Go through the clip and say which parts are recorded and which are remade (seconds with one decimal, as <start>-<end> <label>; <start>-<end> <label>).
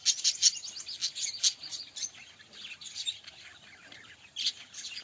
0.0-5.0 recorded